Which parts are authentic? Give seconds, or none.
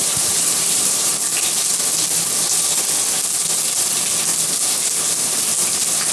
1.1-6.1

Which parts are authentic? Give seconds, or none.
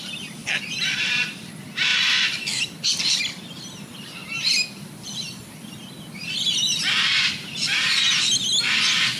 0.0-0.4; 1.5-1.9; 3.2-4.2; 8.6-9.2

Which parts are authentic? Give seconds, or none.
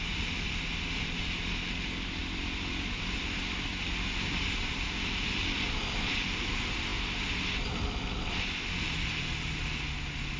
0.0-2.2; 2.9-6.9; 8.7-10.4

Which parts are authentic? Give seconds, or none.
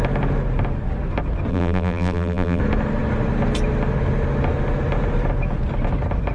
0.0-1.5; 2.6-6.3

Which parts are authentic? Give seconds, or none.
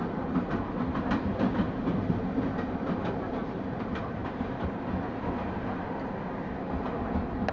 0.0-4.2; 4.8-7.5